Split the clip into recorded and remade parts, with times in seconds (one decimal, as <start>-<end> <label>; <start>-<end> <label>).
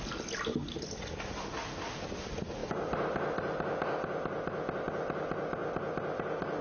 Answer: 0.0-6.6 recorded